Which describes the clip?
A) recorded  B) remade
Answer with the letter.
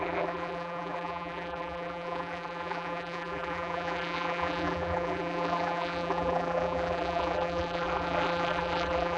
B